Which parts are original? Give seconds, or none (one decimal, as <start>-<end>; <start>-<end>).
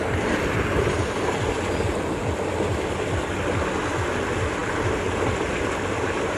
0.0-6.4